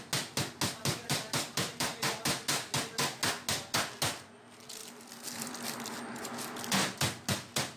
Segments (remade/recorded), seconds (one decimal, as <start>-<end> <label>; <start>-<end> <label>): 0.0-0.9 recorded; 0.9-2.2 remade; 2.2-4.8 recorded; 4.8-5.5 remade; 5.5-7.8 recorded